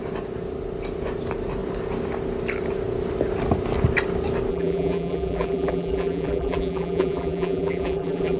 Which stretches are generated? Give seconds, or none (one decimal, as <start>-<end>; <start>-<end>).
4.5-8.4

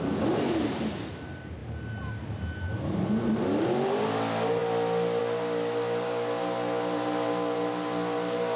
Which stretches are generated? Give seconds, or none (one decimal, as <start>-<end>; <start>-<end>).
none

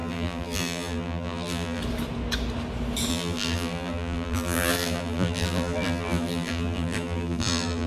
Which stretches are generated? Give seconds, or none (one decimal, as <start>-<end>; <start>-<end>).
0.0-1.8; 3.1-7.9